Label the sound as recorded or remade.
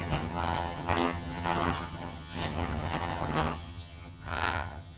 remade